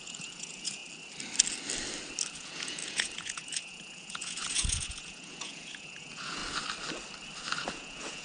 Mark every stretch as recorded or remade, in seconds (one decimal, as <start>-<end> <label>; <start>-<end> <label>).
0.0-0.8 remade; 0.8-2.3 recorded; 2.3-6.4 remade; 6.4-7.7 recorded; 7.7-8.2 remade